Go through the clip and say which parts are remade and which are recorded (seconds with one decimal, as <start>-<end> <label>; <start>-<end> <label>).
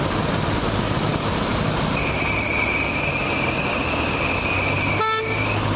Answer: 0.0-5.8 recorded